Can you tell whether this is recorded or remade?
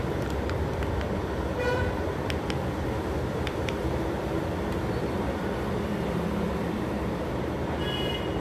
remade